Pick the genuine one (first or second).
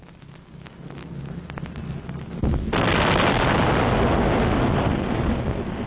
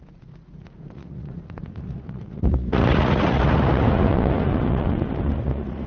first